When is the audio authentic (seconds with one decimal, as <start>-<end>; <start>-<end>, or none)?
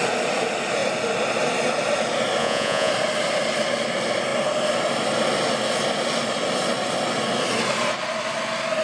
0.0-2.4; 2.9-8.8